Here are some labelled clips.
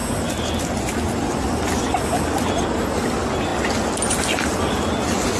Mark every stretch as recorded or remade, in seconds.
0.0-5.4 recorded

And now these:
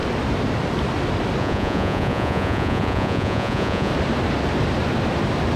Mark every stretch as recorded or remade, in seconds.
0.0-1.4 recorded; 1.4-3.9 remade; 3.9-5.6 recorded

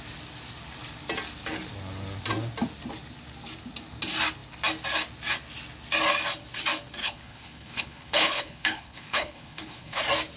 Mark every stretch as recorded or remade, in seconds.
0.0-7.0 recorded; 7.0-10.0 remade; 10.0-10.4 recorded

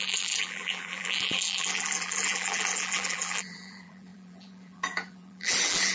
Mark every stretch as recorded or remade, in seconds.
0.0-5.9 remade